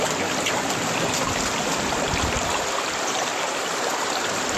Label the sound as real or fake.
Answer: real